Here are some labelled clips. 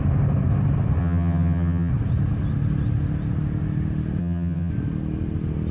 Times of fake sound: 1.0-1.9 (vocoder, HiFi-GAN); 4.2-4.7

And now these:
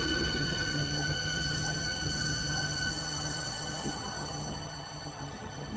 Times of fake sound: 0.0-5.8 (vocoder, HiFi-GAN)

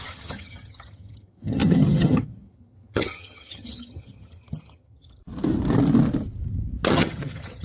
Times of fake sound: 0.0-5.2 (vocoder, HiFi-GAN); 6.9-7.6

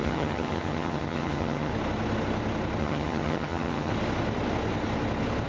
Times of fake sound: 0.0-1.7 (vocoder, HiFi-GAN); 2.8-3.9

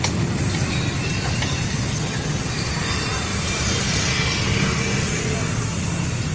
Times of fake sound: 1.9-2.5 (vocoder, HiFi-GAN)